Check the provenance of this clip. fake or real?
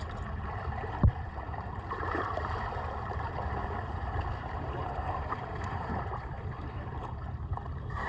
fake